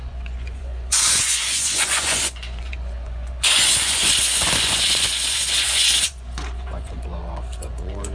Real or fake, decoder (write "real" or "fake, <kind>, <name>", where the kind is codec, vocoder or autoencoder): fake, vocoder, Vocos